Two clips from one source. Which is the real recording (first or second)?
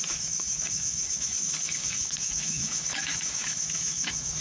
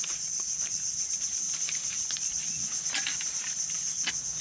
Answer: second